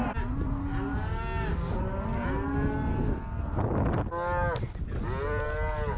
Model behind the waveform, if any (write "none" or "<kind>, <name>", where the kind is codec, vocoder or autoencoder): none